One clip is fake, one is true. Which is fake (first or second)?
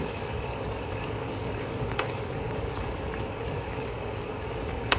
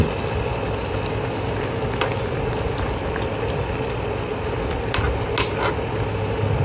first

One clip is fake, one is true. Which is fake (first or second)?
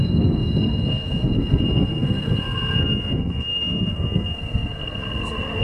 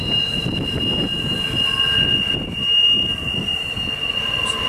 first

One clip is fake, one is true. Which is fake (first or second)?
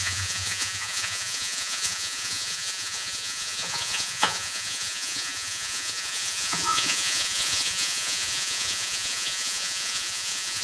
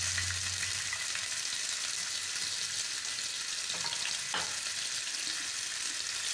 first